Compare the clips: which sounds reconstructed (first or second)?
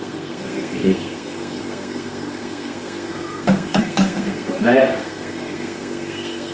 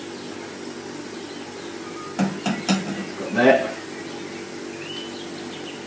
first